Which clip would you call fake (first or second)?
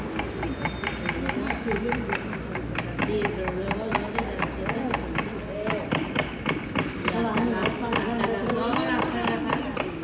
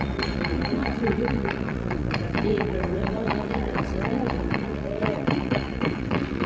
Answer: second